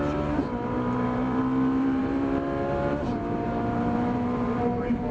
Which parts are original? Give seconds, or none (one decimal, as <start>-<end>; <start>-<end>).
none